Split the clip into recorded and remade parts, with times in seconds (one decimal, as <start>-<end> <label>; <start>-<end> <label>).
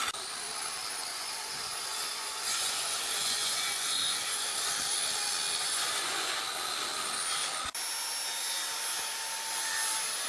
0.0-1.1 recorded; 1.1-4.5 remade; 4.5-5.6 recorded; 5.6-6.4 remade; 6.4-10.3 recorded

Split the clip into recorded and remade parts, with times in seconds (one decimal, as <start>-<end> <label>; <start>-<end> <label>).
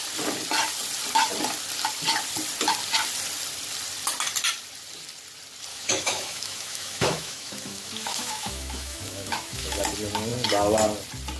0.0-5.7 recorded; 5.7-9.8 remade; 9.8-11.4 recorded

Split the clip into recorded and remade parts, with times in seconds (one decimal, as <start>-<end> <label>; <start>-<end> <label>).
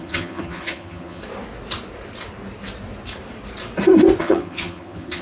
0.0-1.2 remade; 1.2-4.2 recorded; 4.2-5.2 remade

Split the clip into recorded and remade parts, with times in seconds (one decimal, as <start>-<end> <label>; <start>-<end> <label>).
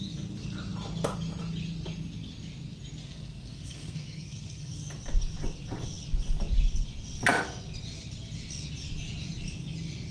0.0-3.0 recorded; 3.0-4.7 remade; 4.7-10.1 recorded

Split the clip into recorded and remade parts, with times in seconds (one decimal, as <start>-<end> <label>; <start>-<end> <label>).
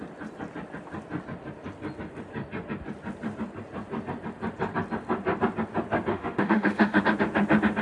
0.0-6.1 recorded; 6.1-7.0 remade; 7.0-7.8 recorded